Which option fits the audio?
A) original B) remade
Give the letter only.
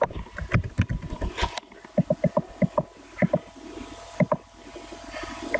A